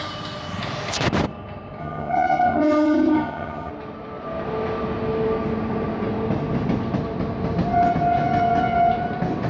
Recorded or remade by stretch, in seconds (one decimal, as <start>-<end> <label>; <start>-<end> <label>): 0.0-1.8 recorded; 1.8-3.7 remade; 3.7-9.5 recorded